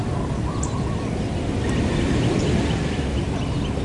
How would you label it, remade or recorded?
recorded